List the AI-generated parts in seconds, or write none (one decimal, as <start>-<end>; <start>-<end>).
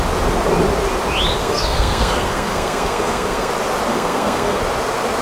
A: 1.4-3.5; 3.9-4.6